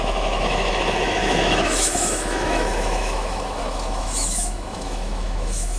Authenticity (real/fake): fake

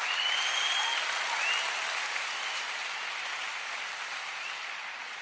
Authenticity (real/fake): real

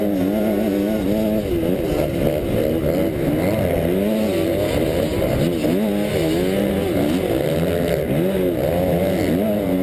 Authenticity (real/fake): real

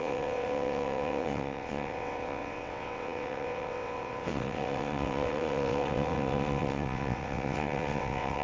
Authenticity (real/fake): fake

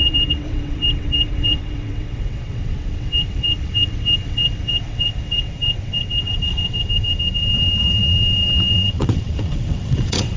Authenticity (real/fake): fake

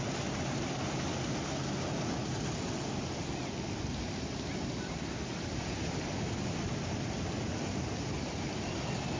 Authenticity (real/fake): real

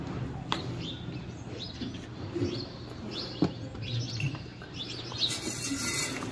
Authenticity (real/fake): real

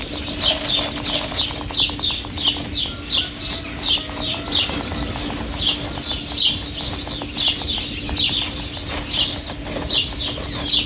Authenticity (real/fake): real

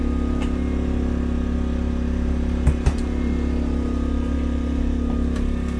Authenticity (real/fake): real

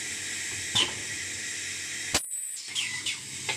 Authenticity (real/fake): real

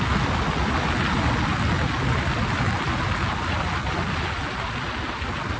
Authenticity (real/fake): real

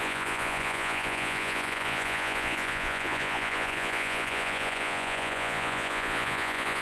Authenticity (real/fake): fake